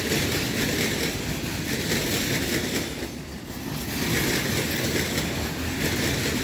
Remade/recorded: recorded